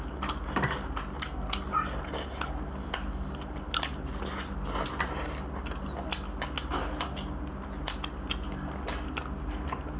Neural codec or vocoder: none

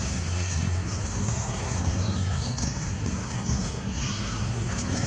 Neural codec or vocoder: codec, SNAC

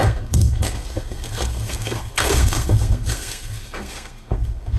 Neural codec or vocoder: codec, SNAC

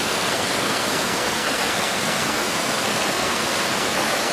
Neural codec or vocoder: codec, SNAC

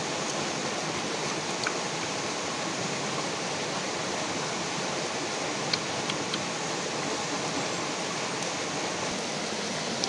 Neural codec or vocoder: none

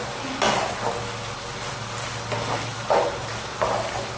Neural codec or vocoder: none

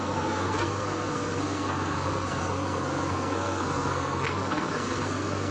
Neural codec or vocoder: codec, SNAC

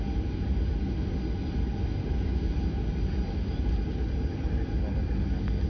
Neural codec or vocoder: none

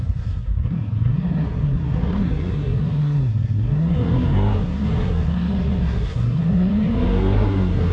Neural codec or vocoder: codec, SNAC